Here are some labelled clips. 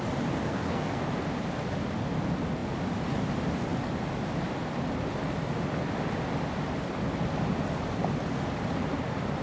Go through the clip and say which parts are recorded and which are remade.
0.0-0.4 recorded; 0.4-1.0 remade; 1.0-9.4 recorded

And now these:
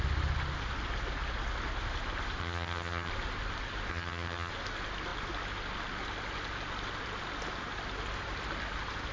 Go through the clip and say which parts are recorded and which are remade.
0.0-2.4 recorded; 2.4-3.1 remade; 3.1-3.9 recorded; 3.9-4.5 remade; 4.5-9.1 recorded